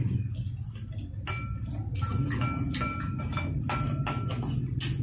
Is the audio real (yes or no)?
yes